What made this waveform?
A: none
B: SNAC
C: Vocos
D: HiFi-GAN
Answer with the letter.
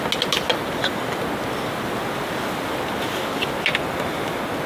A